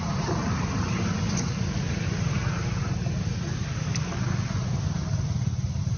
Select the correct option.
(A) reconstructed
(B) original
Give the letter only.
B